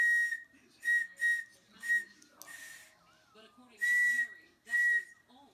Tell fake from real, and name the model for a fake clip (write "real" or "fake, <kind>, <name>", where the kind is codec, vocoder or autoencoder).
real